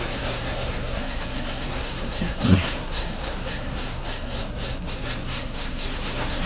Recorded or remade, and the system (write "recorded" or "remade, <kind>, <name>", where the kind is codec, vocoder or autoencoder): remade, codec, SNAC